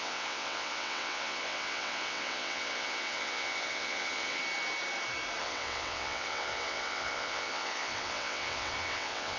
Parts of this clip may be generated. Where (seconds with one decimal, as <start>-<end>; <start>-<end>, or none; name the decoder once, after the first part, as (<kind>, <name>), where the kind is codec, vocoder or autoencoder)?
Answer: 0.0-4.4 (vocoder, WaveNeXt); 5.4-9.4